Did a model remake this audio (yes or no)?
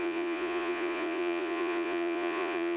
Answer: yes